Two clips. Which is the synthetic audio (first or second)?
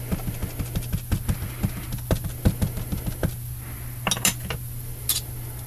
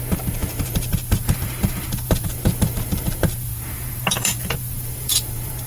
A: second